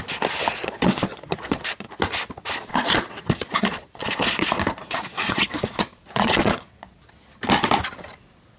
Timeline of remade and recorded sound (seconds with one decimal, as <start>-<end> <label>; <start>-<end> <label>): 0.0-0.5 recorded; 0.5-2.0 remade; 2.0-2.7 recorded; 2.7-7.1 remade; 7.1-8.6 recorded